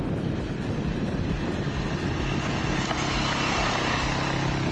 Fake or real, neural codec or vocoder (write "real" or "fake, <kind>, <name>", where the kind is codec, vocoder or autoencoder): real